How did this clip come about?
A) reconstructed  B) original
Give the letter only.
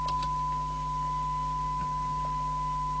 B